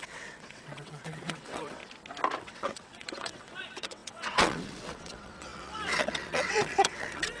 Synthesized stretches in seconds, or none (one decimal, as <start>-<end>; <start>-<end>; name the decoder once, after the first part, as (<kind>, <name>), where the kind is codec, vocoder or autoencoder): 0.0-1.8 (vocoder, WaveNeXt); 2.4-7.4